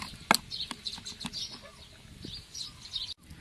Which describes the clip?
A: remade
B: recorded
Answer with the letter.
B